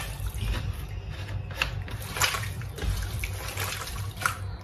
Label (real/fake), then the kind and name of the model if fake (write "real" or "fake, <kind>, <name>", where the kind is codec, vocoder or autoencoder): real